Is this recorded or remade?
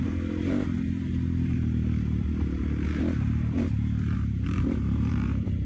remade